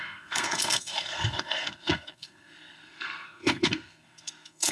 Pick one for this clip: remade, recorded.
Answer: remade